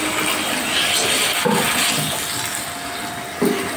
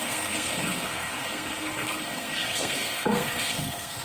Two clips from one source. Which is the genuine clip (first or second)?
first